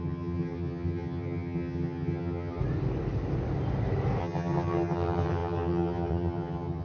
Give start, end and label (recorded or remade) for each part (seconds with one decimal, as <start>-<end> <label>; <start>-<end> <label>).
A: 0.0-2.6 remade; 2.6-4.2 recorded; 4.2-6.8 remade